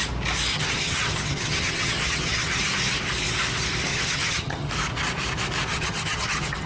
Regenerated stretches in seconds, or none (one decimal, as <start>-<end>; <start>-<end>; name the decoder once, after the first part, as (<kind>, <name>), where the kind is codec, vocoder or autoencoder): 0.5-2.6 (vocoder, HiFi-GAN); 3.9-4.7; 5.7-6.7